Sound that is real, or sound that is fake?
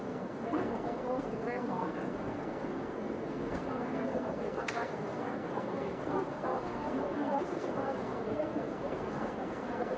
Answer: fake